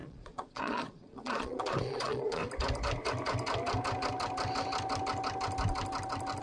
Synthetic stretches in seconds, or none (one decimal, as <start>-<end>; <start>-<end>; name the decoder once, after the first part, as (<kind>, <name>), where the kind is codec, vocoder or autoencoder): 0.0-2.4 (vocoder, Vocos)